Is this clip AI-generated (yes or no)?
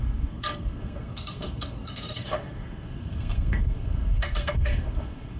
yes